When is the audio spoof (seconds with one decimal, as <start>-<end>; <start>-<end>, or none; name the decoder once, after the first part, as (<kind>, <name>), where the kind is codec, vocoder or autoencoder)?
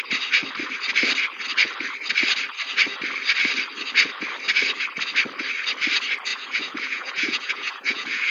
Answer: 6.3-8.3 (vocoder, Vocos)